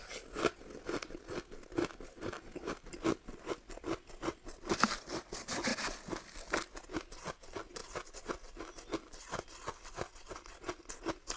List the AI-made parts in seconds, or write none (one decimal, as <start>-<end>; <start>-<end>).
none